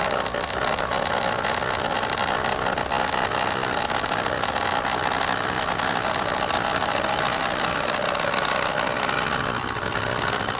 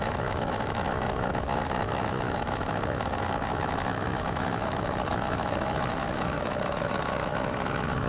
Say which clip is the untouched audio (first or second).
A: first